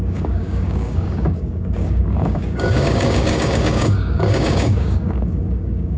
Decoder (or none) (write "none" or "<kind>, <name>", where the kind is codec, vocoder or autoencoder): codec, DAC